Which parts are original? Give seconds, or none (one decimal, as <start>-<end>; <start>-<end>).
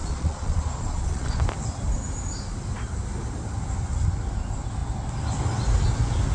1.4-6.3